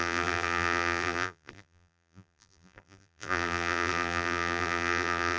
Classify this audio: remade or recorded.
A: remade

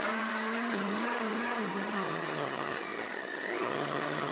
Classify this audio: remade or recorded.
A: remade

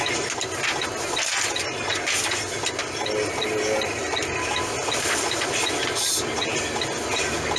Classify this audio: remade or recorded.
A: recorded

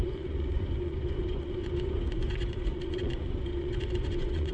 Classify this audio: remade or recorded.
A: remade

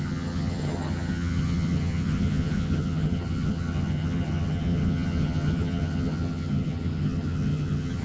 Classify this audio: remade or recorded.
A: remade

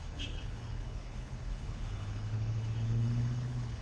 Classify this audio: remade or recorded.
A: remade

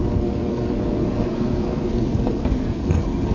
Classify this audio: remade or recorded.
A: remade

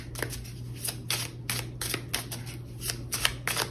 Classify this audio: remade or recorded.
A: recorded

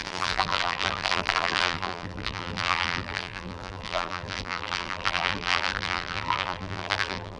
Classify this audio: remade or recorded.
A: remade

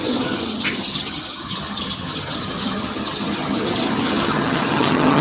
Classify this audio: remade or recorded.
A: remade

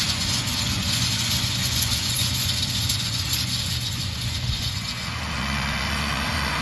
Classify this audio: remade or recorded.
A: remade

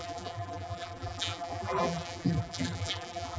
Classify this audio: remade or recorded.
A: remade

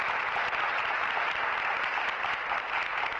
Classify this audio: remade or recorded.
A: recorded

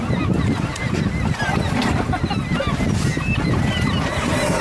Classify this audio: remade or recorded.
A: recorded